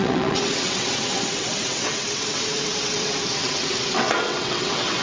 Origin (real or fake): fake